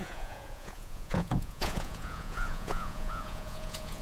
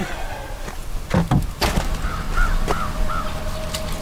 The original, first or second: second